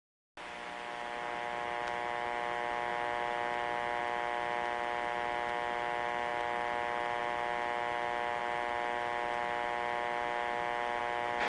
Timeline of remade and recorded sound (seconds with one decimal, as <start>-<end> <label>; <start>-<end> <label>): 0.0-11.5 recorded